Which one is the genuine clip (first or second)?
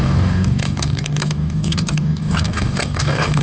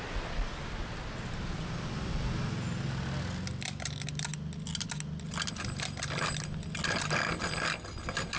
second